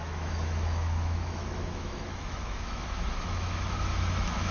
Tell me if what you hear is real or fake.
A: fake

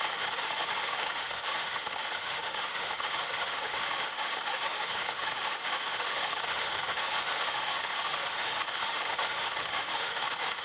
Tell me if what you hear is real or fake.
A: fake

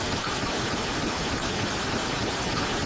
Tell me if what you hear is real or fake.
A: real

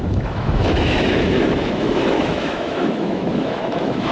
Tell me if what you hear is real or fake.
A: fake